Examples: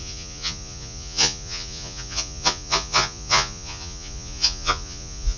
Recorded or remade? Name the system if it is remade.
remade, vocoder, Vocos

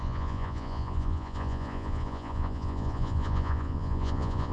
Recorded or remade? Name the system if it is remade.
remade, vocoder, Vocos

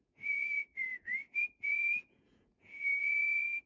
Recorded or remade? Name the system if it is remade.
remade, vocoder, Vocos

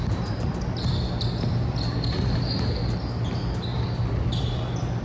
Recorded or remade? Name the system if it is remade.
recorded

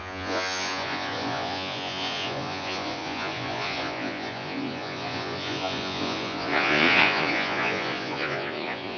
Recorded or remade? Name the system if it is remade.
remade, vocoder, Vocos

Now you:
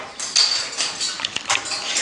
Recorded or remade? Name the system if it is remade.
recorded